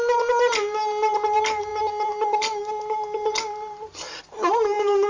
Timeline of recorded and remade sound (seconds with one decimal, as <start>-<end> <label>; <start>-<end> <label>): 0.0-5.1 recorded